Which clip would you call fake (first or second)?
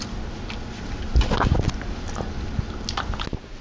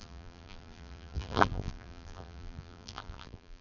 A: second